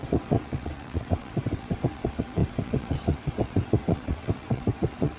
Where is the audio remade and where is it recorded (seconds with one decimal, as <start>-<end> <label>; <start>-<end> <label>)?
0.0-5.2 remade